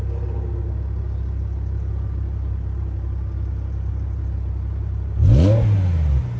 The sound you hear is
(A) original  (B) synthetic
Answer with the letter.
A